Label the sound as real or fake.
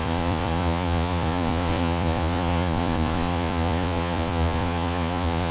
fake